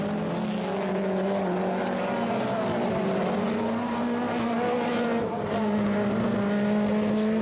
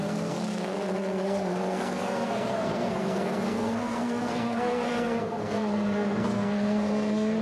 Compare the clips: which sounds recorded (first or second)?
first